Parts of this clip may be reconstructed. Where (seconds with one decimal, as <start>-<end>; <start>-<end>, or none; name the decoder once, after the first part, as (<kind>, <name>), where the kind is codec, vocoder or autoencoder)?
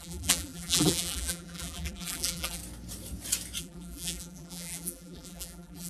0.0-2.6 (vocoder, BigVGAN v2); 3.6-5.9